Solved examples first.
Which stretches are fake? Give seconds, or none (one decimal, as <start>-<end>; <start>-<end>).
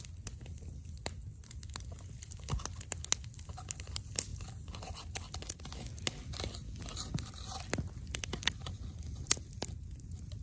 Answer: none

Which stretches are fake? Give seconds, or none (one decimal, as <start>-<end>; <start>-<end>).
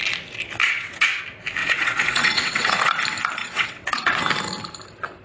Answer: 0.6-1.2; 1.6-3.0; 3.4-4.2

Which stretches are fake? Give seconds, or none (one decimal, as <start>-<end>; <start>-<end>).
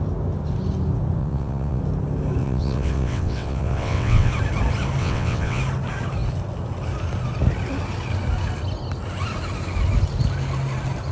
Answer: 1.2-1.8; 2.4-4.3; 5.0-5.6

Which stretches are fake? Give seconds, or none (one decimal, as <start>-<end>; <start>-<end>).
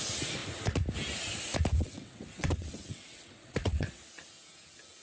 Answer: 1.8-4.0